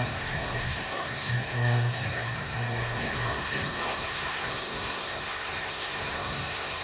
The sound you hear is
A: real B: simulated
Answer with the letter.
B